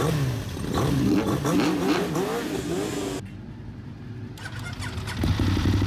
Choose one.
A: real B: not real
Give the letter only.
A